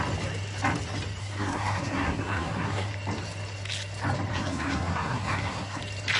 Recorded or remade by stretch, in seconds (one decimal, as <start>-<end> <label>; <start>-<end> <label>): 0.0-1.2 recorded; 1.2-2.9 remade; 2.9-4.3 recorded; 4.3-5.8 remade; 5.8-6.2 recorded